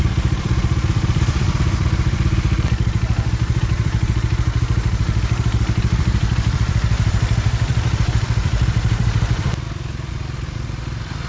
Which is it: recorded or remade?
remade